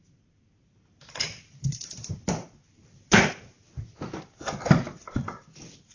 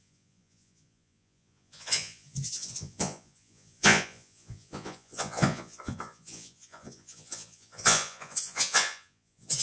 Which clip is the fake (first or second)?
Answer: second